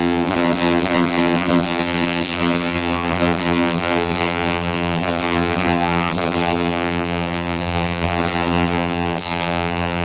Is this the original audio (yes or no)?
no